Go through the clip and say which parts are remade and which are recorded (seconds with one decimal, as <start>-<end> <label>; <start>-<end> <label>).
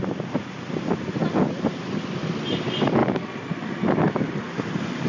0.0-5.1 recorded